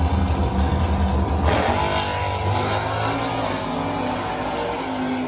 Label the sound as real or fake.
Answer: real